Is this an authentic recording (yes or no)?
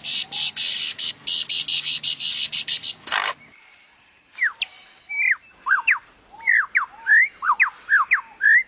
yes